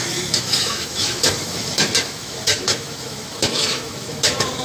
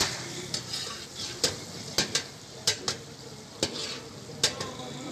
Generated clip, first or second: first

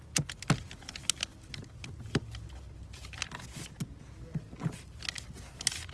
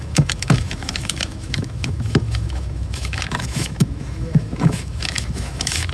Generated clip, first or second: second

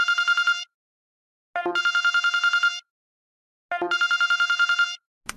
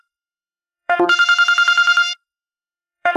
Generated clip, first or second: second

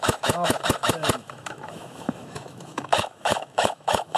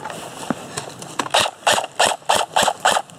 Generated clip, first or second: first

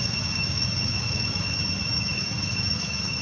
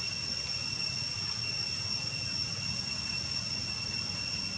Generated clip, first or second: first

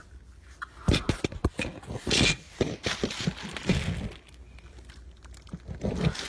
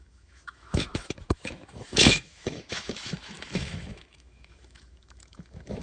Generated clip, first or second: second